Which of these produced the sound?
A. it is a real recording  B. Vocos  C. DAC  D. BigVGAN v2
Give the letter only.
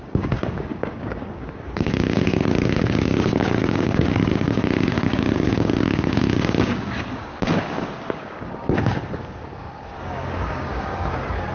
C